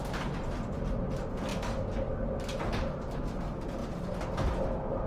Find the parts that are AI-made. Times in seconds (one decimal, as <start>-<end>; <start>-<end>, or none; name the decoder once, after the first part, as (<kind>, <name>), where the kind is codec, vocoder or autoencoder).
none